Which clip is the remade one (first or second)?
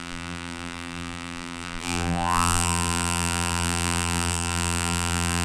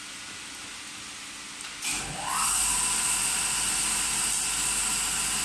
first